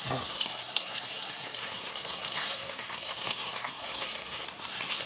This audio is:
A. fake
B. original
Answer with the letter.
A